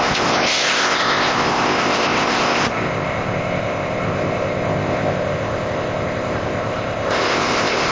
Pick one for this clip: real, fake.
fake